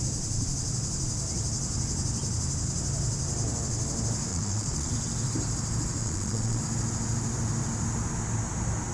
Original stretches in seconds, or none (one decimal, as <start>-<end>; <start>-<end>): 0.0-4.3; 4.9-6.0; 6.6-8.9